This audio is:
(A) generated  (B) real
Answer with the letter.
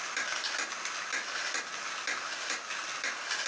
B